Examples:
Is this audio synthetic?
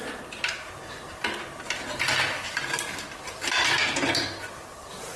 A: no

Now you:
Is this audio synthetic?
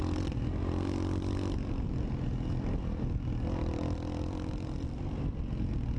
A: no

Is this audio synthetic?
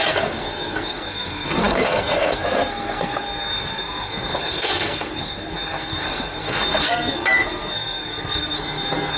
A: yes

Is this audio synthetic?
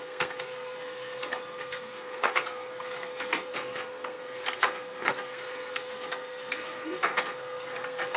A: yes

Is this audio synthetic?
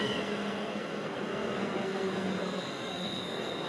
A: yes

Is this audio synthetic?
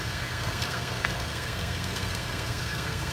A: yes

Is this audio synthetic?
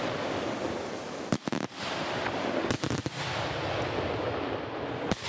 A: no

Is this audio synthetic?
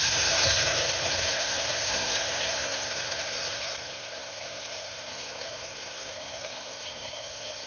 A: yes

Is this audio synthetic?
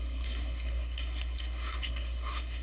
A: yes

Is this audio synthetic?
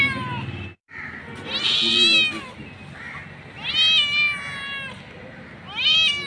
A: no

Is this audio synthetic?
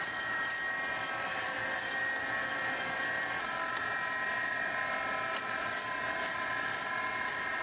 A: no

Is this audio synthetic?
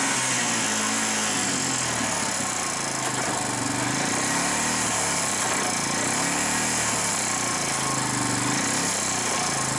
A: no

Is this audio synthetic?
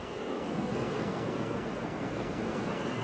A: yes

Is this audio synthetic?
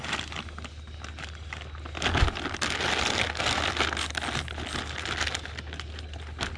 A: no